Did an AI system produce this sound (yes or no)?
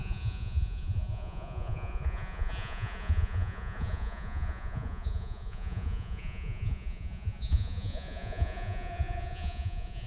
yes